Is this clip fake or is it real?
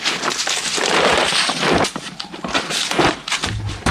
fake